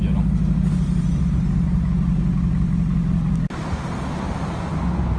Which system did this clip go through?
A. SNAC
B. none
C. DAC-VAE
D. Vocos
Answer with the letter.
B